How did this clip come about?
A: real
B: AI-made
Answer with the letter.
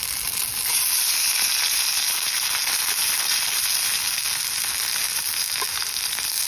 A